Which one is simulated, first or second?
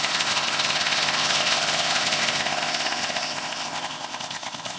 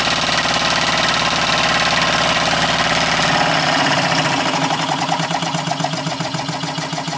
first